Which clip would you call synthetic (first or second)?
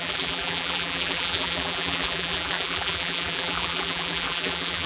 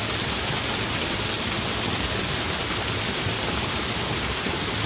first